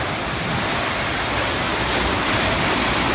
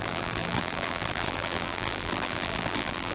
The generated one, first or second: second